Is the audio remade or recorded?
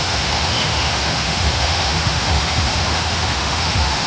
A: remade